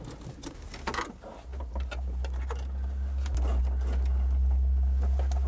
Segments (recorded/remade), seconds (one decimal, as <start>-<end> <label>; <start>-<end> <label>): 0.0-5.5 recorded

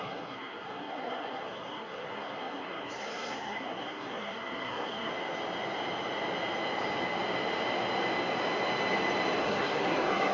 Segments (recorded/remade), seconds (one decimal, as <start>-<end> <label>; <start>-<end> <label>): 0.0-5.1 remade; 5.1-9.4 recorded; 9.4-10.3 remade

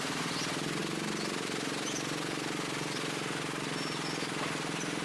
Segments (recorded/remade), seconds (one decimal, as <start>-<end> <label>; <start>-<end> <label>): 0.0-5.0 recorded

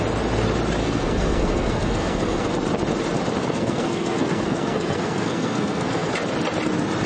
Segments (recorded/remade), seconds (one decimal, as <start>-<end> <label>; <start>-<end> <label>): 0.0-0.8 recorded; 0.8-2.5 remade; 2.5-3.4 recorded; 3.4-6.1 remade; 6.1-7.1 recorded

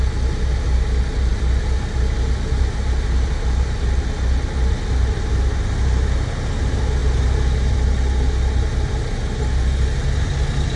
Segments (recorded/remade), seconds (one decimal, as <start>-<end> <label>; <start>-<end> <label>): 0.0-10.8 recorded

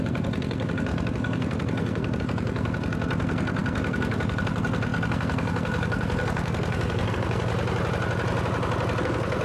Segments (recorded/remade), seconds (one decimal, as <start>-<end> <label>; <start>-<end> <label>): 0.0-7.5 remade; 7.5-9.0 recorded; 9.0-9.4 remade

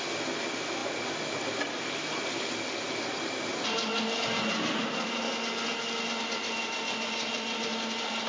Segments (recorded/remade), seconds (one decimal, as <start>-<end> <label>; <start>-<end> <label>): 0.0-8.3 recorded